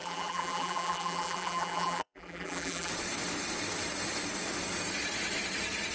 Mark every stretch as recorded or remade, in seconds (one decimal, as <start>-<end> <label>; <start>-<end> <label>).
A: 0.0-2.9 remade; 2.9-5.9 recorded